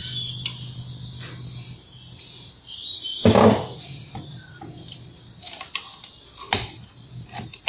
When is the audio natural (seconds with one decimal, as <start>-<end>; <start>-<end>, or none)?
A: 0.0-7.7